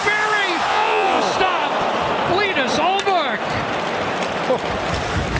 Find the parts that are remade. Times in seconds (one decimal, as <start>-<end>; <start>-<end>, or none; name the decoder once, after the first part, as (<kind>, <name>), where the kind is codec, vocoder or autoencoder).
0.7-1.2 (vocoder, WaveNeXt)